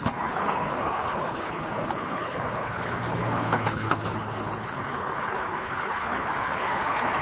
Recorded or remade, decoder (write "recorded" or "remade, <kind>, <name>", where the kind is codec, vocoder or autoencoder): remade, codec, HILCodec